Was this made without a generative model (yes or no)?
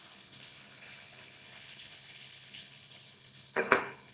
no